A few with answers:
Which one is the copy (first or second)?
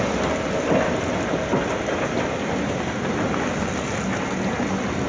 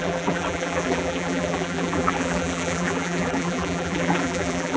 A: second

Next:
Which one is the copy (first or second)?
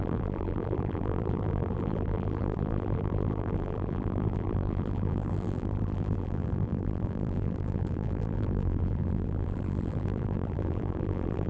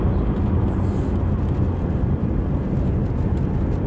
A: first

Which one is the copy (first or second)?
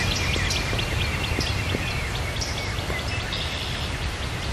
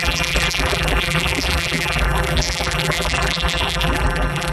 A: second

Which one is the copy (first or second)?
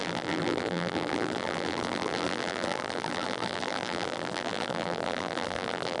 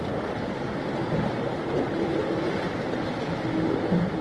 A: first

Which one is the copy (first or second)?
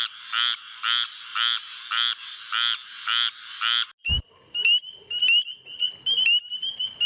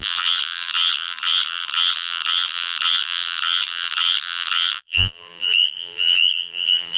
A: second